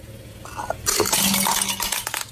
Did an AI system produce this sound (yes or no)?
no